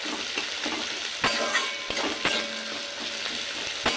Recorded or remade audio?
recorded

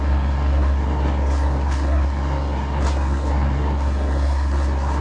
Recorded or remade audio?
remade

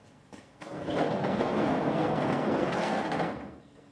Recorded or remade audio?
remade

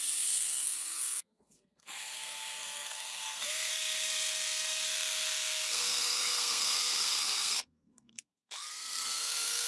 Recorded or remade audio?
remade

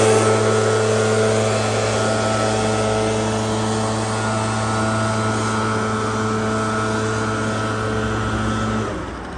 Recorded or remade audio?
recorded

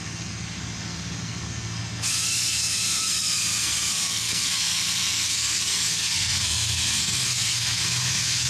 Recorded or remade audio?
remade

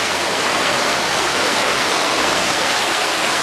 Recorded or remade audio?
remade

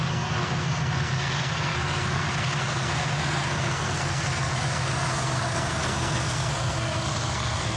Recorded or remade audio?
remade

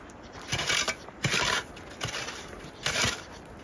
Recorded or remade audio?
recorded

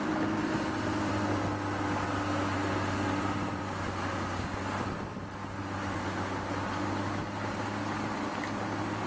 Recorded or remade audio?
recorded